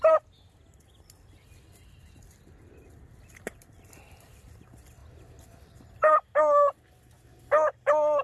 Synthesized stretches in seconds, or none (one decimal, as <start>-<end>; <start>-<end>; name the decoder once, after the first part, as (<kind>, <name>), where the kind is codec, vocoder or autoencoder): none